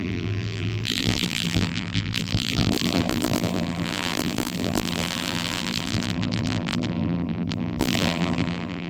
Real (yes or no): no